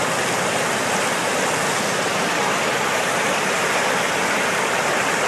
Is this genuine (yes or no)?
yes